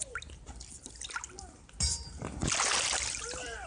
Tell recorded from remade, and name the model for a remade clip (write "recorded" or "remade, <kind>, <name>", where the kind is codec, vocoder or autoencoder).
recorded